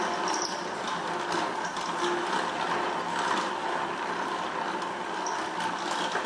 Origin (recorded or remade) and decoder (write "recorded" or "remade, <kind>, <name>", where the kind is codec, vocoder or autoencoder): recorded